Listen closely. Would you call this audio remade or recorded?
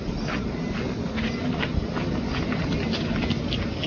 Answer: recorded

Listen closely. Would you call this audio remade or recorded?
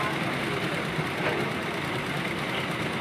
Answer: recorded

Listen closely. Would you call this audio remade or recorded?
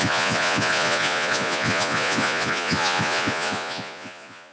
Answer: remade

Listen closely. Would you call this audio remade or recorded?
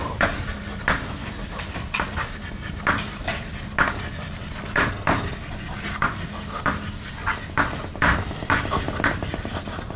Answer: recorded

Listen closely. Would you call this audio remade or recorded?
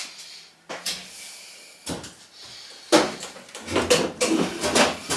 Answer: recorded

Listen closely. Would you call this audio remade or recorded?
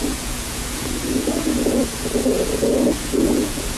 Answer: remade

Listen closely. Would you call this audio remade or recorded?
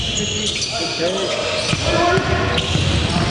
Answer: recorded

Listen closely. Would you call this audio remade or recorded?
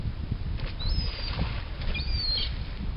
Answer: recorded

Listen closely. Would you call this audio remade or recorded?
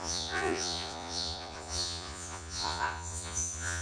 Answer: remade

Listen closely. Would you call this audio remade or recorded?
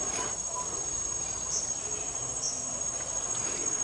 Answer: recorded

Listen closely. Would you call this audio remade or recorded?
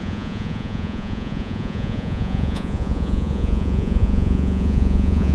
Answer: remade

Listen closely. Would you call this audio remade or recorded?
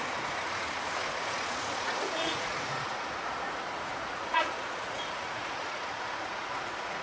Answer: remade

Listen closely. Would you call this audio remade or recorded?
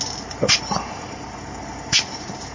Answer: recorded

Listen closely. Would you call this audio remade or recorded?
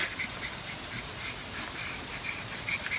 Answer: recorded